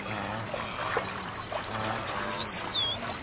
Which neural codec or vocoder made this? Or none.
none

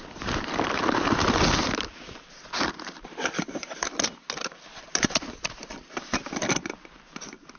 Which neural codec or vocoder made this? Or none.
none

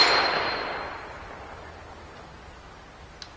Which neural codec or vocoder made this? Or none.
none